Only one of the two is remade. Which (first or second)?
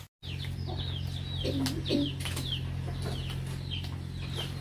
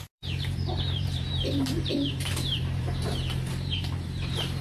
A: second